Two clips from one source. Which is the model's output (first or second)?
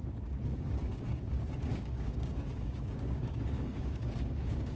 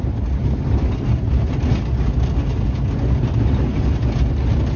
first